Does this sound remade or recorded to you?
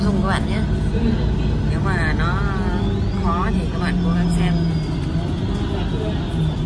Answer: recorded